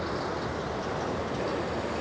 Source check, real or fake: real